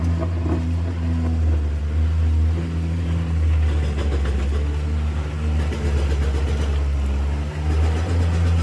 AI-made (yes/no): no